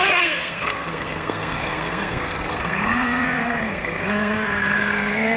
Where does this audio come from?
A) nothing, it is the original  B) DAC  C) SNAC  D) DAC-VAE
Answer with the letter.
C